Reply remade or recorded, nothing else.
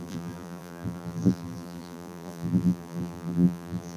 remade